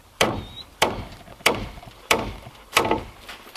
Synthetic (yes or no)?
yes